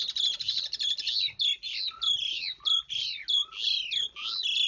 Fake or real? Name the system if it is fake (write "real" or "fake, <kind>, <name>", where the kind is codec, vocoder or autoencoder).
real